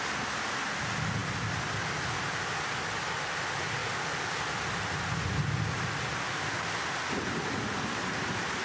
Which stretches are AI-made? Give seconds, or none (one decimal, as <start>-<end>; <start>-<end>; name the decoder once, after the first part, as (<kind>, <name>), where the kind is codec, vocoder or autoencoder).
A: 3.8-4.3 (codec, DAC)